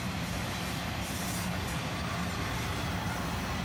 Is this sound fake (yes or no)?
no